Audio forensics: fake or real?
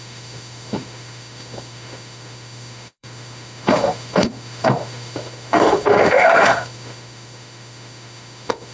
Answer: fake